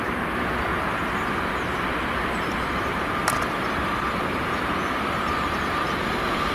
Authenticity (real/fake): fake